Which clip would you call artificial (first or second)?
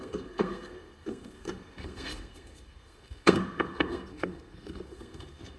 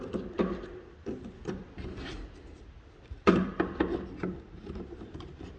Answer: first